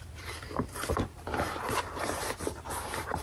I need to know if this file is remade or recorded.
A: remade